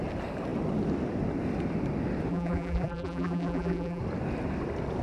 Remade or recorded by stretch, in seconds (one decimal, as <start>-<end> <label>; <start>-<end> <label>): 0.0-2.3 recorded; 2.3-4.0 remade; 4.0-5.0 recorded